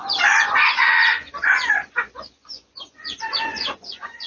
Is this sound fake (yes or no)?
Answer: yes